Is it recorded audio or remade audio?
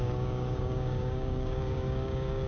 remade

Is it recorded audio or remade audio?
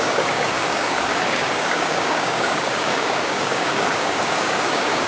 remade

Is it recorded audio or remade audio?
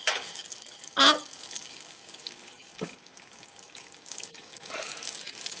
remade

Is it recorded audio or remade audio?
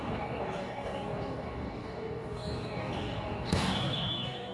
remade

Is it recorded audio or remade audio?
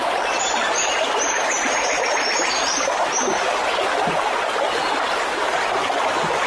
recorded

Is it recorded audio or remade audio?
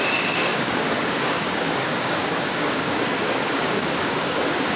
remade